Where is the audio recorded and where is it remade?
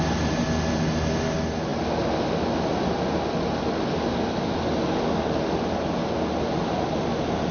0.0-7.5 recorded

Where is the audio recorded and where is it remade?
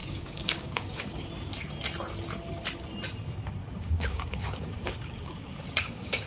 0.0-1.3 remade; 1.3-3.6 recorded; 3.6-6.3 remade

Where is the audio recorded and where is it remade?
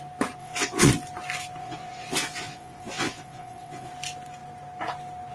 0.0-0.4 recorded; 0.4-0.9 remade; 0.9-1.6 recorded; 1.6-3.9 remade; 3.9-5.3 recorded